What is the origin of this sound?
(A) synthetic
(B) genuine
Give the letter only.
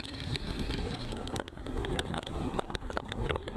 A